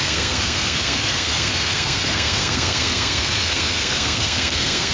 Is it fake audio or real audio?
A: fake